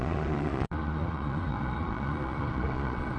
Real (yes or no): no